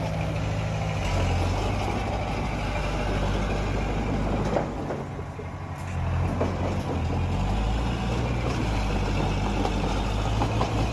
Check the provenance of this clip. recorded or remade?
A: recorded